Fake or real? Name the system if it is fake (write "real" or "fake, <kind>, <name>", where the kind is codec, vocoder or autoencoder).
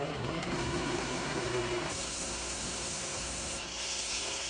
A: fake, codec, SNAC